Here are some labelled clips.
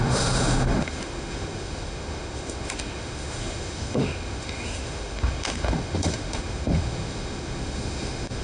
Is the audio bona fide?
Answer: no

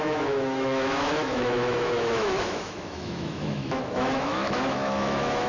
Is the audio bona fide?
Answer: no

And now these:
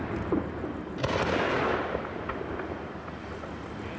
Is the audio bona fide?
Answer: yes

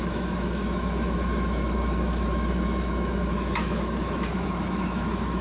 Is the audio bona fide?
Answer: no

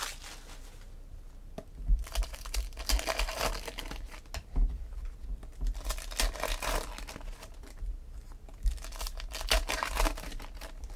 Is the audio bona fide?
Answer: yes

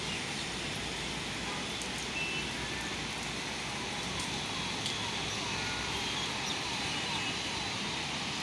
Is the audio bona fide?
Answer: yes